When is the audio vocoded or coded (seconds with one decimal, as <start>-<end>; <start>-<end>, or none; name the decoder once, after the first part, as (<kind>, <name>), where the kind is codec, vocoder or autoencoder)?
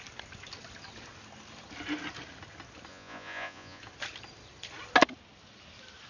2.9-3.8 (vocoder, Vocos)